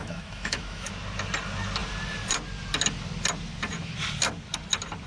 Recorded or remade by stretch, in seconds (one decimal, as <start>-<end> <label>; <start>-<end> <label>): 0.0-0.9 remade; 0.9-5.1 recorded